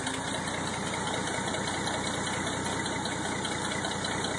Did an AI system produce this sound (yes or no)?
no